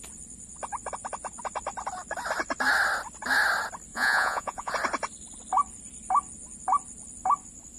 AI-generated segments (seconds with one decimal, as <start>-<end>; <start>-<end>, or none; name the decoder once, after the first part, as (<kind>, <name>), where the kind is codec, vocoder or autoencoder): 3.9-4.7 (vocoder, Vocos)